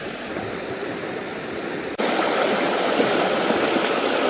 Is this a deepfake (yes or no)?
no